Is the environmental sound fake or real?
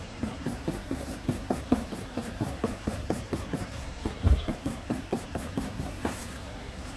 fake